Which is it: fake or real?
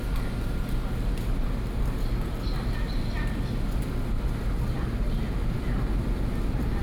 real